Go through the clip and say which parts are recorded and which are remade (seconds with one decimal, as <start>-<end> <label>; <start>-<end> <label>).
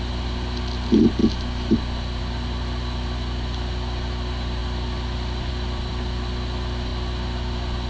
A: 0.0-1.2 remade; 1.2-2.2 recorded; 2.2-6.9 remade; 6.9-7.9 recorded